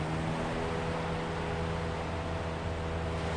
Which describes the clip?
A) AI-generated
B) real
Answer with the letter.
B